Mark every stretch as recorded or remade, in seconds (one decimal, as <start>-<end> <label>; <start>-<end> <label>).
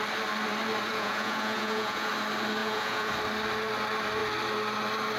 0.0-0.9 recorded; 0.9-2.1 remade; 2.1-2.6 recorded; 2.6-3.1 remade; 3.1-5.2 recorded